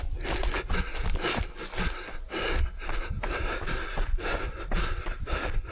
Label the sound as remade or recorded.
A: recorded